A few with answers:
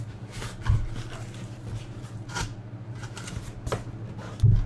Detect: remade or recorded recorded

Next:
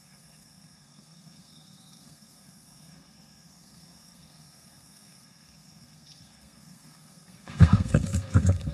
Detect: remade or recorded remade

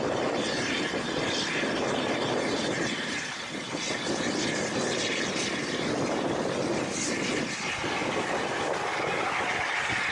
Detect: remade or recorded recorded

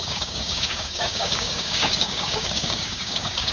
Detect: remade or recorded remade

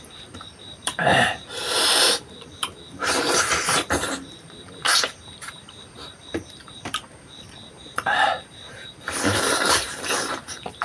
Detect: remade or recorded remade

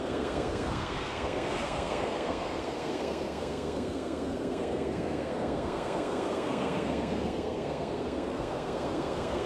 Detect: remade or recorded remade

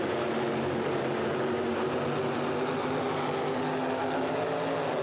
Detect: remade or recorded recorded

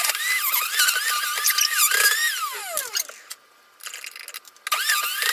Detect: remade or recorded recorded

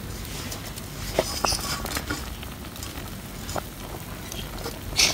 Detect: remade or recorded recorded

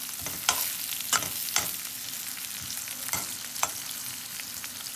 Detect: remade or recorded recorded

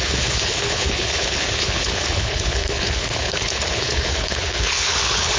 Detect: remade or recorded remade